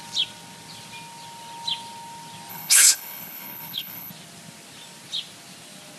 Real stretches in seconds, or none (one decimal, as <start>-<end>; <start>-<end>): 0.0-2.5; 4.1-6.0